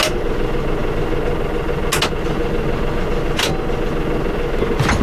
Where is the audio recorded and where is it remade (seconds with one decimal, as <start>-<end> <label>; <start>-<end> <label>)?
0.0-5.0 recorded